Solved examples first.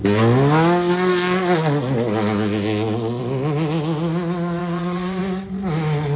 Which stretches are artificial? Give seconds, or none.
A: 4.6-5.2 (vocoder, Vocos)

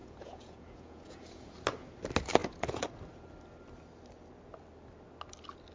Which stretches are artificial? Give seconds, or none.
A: 0.0-1.4 (vocoder, Vocos); 2.4-2.9